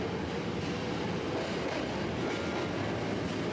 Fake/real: real